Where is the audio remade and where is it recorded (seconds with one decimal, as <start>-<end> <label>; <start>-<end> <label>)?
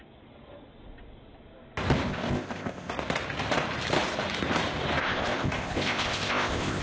0.0-2.1 recorded; 2.1-2.9 remade; 2.9-5.0 recorded; 5.0-6.8 remade